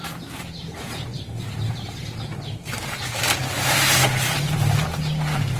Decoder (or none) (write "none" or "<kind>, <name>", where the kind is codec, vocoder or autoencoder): vocoder, BigVGAN v2